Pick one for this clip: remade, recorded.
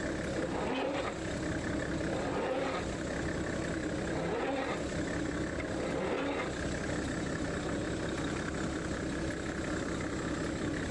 recorded